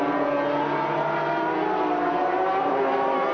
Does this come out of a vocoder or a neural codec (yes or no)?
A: no